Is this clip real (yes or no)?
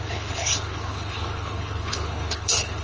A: no